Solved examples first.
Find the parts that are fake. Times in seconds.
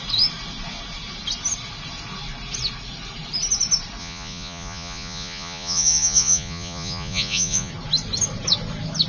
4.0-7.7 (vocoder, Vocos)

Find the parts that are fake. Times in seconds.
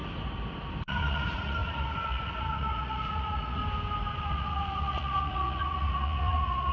0.8-3.6 (vocoder, Vocos); 4.2-6.7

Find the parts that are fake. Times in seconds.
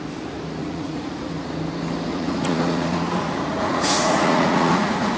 0.6-1.3 (vocoder, Vocos); 2.1-5.2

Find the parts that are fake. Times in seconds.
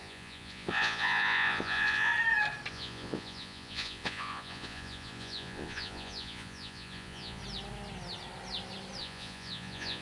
0.0-2.1 (vocoder, Vocos); 2.7-7.4; 9.0-10.0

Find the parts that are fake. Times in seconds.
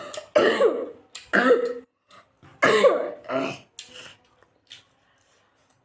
none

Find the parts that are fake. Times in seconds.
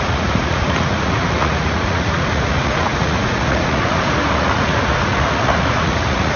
0.0-6.4 (vocoder, Vocos)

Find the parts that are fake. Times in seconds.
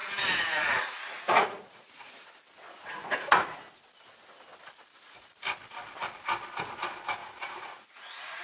0.0-2.1 (vocoder, Vocos); 3.0-3.6; 7.2-8.4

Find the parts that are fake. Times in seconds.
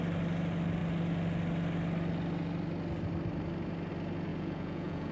4.3-5.1 (vocoder, Vocos)